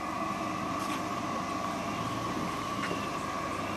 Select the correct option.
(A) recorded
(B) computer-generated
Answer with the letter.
A